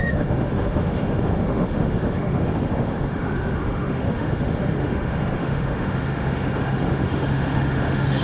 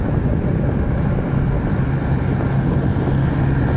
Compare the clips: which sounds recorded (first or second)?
second